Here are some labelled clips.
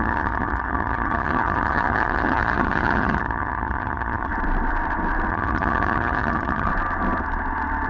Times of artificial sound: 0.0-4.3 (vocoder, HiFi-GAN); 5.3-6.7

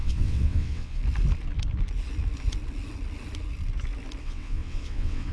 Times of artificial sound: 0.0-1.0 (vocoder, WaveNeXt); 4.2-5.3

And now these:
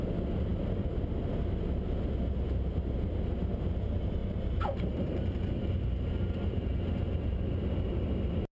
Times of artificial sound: 4.2-5.7 (vocoder, BigVGAN v2)

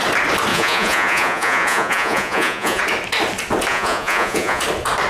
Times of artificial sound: 0.5-2.8 (vocoder, Vocos); 3.7-4.6